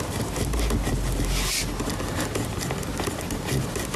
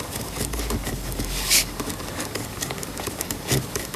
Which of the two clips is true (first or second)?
first